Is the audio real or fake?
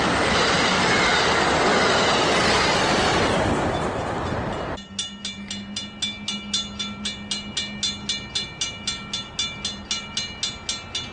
real